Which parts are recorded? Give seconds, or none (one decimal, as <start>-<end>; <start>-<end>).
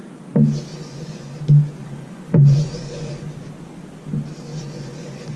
0.0-0.7; 1.4-1.8; 3.3-4.5